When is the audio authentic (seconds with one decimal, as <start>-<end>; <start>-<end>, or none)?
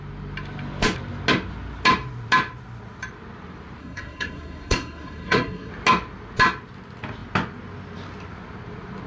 0.0-3.8; 5.7-9.1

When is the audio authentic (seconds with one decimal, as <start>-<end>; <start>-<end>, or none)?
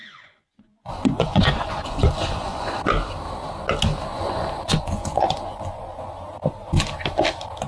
2.9-4.1; 6.1-7.7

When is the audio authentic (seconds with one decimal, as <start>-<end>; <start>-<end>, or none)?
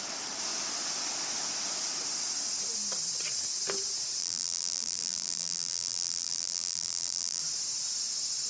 0.0-4.2; 7.4-8.5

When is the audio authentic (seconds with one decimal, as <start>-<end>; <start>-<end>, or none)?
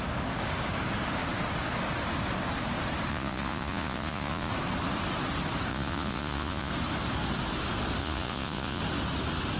0.0-3.1; 4.5-5.7; 6.7-8.0; 8.8-9.6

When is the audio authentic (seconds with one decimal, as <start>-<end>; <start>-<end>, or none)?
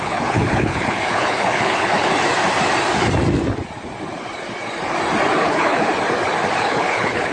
2.1-5.4; 5.9-6.6